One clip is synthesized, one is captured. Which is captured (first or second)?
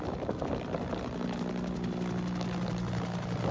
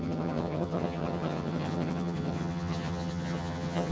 first